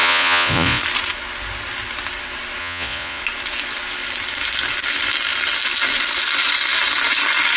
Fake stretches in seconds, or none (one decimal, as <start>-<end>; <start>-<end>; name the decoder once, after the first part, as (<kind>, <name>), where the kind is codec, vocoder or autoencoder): 0.0-0.8 (vocoder, Vocos); 2.6-3.2